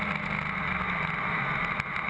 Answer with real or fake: real